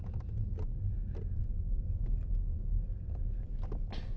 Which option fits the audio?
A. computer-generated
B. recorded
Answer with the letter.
B